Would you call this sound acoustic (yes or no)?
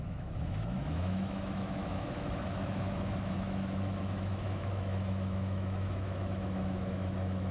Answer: no